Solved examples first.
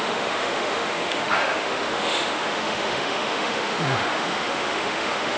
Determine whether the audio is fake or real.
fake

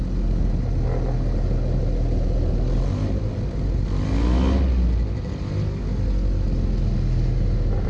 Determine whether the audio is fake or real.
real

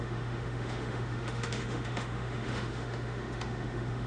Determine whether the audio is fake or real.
fake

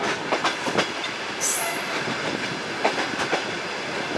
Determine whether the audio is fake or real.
real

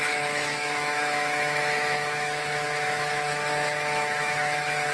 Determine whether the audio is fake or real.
fake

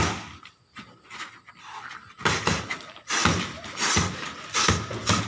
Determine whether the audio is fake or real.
real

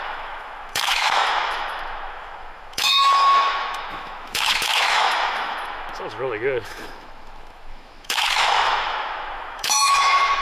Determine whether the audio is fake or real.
fake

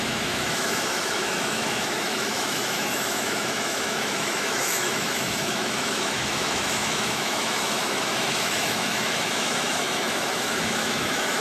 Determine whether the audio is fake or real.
fake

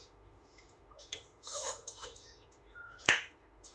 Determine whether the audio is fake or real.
fake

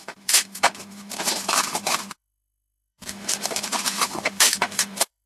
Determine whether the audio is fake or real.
fake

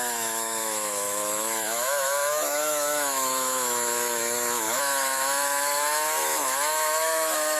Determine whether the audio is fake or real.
fake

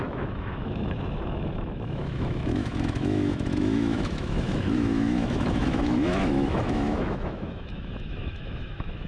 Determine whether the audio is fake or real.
fake